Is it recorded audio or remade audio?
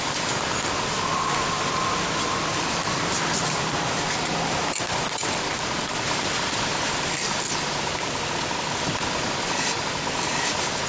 recorded